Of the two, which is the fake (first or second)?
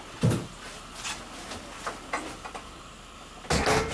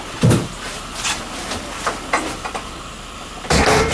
second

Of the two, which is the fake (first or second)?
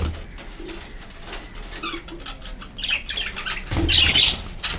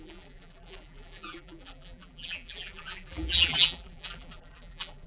second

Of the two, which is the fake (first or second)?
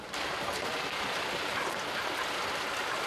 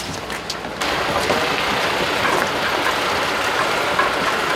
first